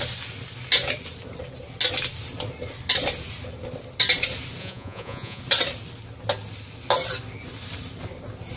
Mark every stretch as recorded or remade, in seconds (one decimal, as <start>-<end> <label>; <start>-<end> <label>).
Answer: 0.0-4.6 recorded; 4.6-5.4 remade; 5.4-8.6 recorded